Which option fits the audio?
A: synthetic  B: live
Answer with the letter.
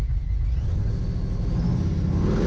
B